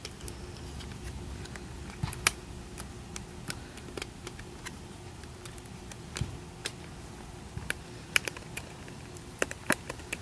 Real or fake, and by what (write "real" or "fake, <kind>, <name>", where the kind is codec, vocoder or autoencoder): real